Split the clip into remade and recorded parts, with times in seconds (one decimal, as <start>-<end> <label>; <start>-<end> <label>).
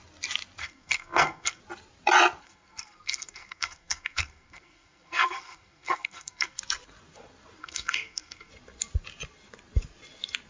0.0-0.6 recorded; 0.6-1.6 remade; 1.6-2.4 recorded; 2.4-6.6 remade; 6.6-7.6 recorded; 7.6-8.5 remade; 8.5-10.5 recorded